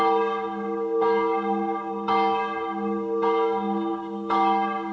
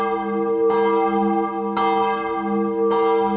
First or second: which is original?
second